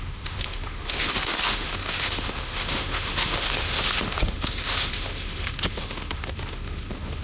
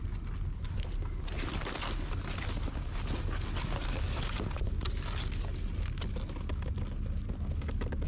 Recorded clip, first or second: second